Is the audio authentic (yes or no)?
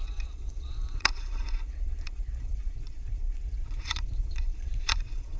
no